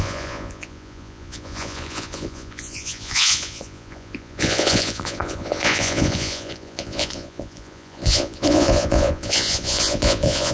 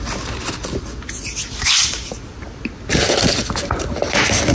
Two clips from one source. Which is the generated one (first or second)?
first